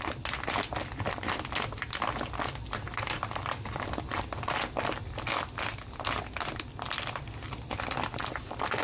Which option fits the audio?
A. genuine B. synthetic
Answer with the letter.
A